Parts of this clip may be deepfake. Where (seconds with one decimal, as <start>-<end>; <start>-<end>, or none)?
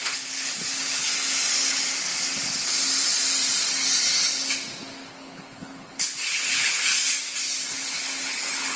0.0-1.1; 5.1-6.9; 7.7-8.8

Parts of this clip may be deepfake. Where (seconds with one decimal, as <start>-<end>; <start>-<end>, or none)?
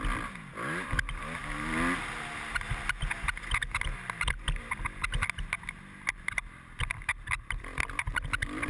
none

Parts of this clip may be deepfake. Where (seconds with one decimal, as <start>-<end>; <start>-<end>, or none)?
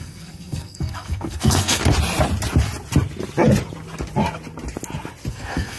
0.0-1.8; 5.3-5.8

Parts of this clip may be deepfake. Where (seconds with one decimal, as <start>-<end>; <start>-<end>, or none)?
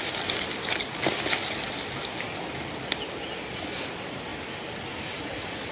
none